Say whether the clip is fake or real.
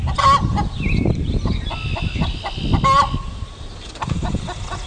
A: real